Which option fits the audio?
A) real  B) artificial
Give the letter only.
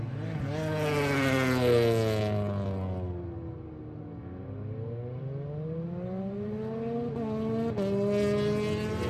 A